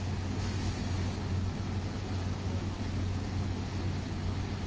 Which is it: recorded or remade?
recorded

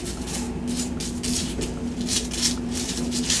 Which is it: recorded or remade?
recorded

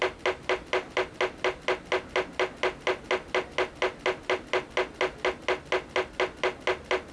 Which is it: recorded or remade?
recorded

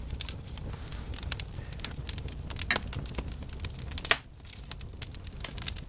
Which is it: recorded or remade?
recorded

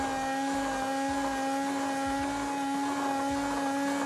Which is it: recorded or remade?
recorded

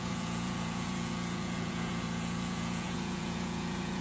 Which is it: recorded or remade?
remade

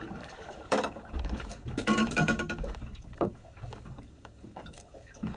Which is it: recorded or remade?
remade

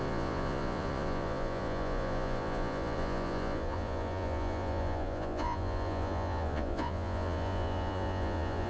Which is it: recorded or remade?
remade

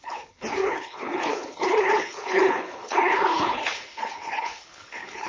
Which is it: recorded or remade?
remade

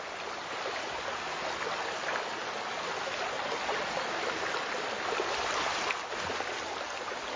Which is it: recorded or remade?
recorded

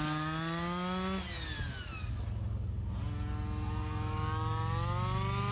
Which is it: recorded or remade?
recorded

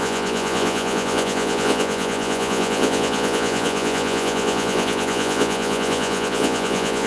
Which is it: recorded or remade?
remade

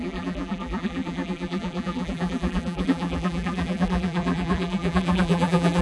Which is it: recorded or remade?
remade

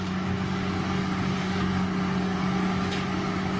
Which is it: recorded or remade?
remade